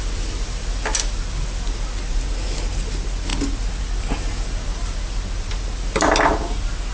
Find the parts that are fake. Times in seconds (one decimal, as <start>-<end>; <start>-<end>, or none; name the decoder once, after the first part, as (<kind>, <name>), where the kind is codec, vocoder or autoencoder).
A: none